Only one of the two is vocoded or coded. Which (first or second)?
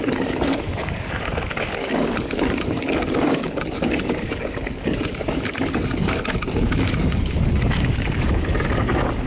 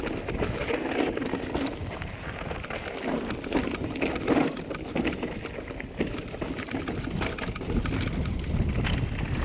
first